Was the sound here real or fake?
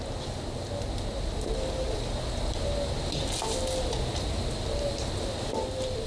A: real